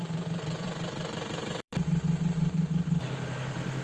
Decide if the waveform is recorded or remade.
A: remade